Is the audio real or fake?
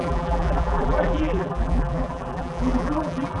fake